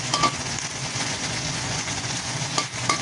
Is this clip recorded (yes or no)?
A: no